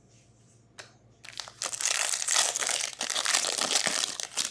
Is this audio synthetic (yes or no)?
no